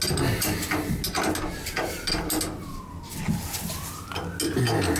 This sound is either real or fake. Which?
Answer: real